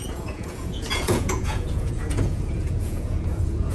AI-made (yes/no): yes